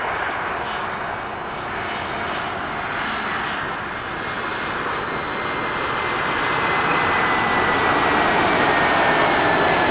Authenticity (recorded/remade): recorded